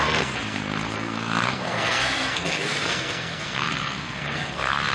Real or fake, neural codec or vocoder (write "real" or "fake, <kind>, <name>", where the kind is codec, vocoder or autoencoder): fake, codec, SNAC